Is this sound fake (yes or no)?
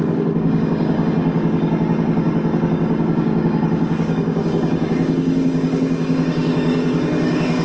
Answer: yes